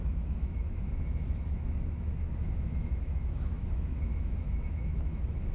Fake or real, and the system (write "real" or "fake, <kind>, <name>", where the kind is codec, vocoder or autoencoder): fake, autoencoder, DAC-VAE